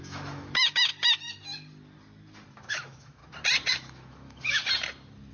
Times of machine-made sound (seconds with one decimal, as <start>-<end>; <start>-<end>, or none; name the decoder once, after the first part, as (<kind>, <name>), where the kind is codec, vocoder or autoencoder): 0.0-0.9 (autoencoder, DAC-VAE); 2.7-3.2; 3.7-4.6